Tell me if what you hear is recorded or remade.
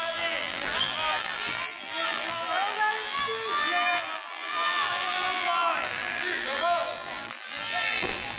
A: remade